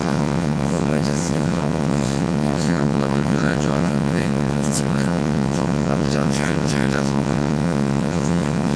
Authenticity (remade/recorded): remade